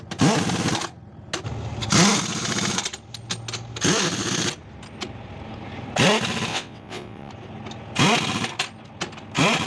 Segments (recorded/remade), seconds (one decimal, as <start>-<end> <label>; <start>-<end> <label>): 0.0-6.5 recorded; 6.5-7.3 remade; 7.3-9.7 recorded